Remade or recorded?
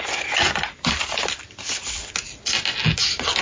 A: recorded